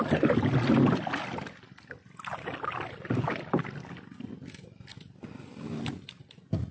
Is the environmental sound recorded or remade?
recorded